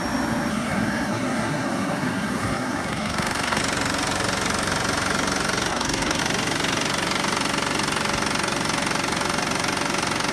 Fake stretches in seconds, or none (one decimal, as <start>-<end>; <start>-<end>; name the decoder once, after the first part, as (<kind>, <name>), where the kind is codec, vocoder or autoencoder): 0.5-3.6 (codec, SNAC); 5.7-6.2